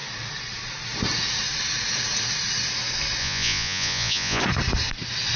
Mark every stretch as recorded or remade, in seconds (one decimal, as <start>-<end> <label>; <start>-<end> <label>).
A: 0.0-3.2 recorded; 3.2-4.4 remade; 4.4-5.4 recorded